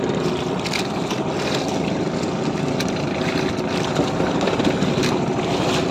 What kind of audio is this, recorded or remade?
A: recorded